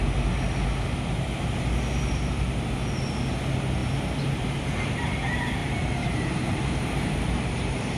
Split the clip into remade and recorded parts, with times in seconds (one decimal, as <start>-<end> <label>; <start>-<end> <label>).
0.0-3.8 recorded; 3.8-5.1 remade; 5.1-5.6 recorded; 5.6-8.0 remade